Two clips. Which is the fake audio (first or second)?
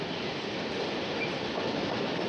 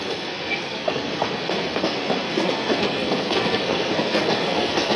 second